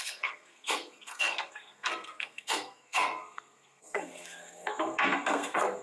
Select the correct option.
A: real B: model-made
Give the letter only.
B